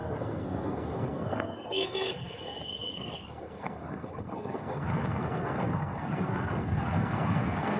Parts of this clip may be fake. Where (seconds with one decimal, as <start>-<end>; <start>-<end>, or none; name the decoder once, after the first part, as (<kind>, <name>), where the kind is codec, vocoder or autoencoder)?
0.0-7.8 (codec, SNAC)